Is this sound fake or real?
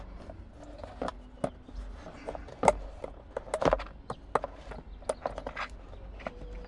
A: real